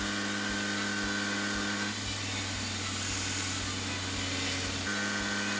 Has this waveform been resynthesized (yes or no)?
no